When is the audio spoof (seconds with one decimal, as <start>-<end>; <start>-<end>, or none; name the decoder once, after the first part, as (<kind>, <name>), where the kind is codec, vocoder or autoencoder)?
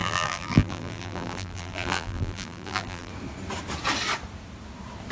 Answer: 0.0-3.1 (vocoder, BigVGAN v2)